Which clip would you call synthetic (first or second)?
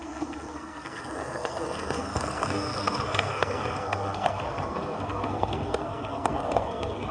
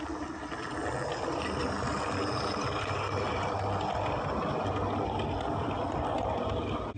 first